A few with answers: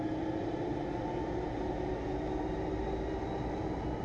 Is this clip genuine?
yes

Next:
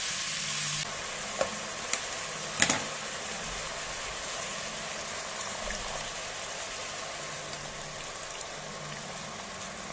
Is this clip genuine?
yes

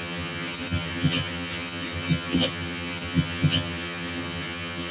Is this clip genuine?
no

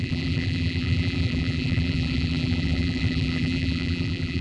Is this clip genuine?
no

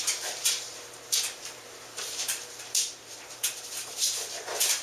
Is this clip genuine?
no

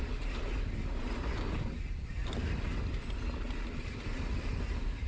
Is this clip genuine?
yes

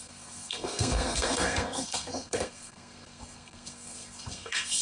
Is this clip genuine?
no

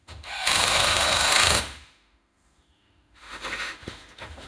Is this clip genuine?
no